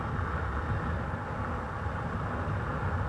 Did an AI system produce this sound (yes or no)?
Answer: no